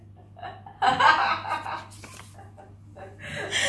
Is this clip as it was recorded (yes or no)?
yes